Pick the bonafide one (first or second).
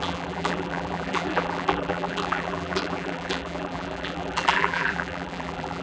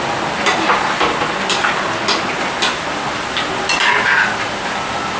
second